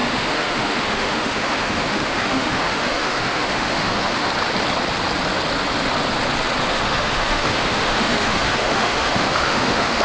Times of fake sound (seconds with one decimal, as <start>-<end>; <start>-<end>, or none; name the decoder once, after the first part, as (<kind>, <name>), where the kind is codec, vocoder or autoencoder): 0.0-4.3 (autoencoder, DAC-VAE); 6.7-10.0